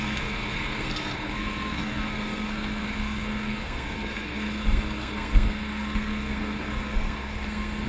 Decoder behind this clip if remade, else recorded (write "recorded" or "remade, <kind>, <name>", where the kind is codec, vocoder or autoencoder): remade, codec, SNAC